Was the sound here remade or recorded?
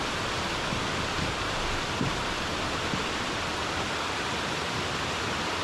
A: recorded